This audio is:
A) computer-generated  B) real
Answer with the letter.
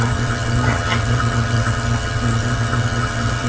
A